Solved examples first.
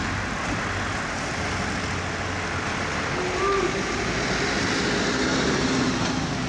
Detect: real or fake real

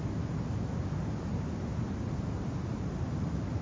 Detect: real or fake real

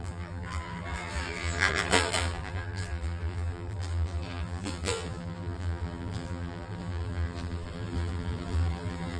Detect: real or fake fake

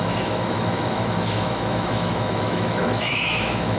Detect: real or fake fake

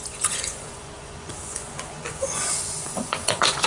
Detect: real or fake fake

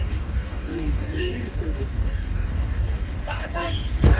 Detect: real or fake fake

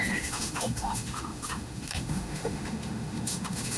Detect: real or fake fake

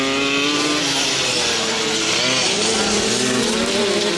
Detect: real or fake real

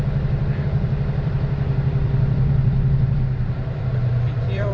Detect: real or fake fake